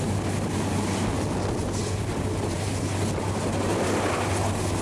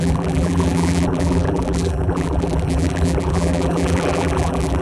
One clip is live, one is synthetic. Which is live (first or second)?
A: first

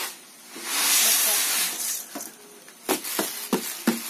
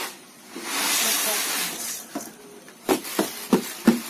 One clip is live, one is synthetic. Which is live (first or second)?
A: first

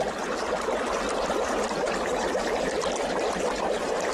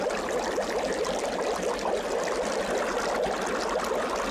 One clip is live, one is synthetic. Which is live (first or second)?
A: second